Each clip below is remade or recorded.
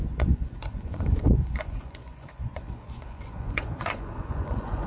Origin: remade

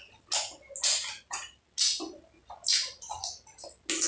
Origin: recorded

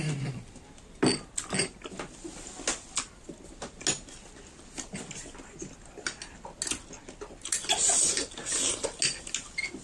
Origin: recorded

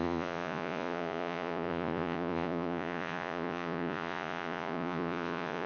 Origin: remade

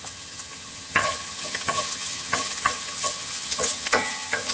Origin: remade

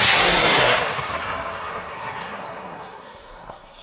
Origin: remade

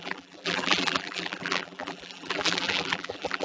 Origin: remade